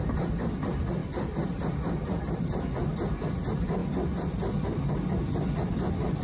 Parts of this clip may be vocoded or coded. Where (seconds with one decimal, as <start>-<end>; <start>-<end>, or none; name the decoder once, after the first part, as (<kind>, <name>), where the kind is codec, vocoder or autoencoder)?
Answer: none